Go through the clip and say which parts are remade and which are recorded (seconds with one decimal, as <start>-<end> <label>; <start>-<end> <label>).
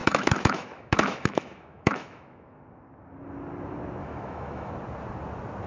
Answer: 0.0-2.6 remade; 2.6-4.0 recorded; 4.0-4.7 remade; 4.7-5.7 recorded